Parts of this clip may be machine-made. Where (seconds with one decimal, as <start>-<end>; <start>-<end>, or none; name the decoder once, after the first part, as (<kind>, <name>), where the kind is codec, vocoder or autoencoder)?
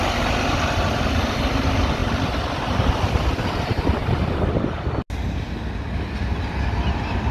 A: none